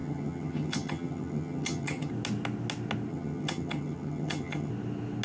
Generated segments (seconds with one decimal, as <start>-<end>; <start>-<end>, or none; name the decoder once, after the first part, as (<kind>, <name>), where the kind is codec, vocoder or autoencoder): 0.0-2.1 (vocoder, HiFi-GAN); 3.1-4.7